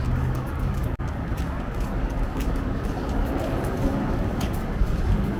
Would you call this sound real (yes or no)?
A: no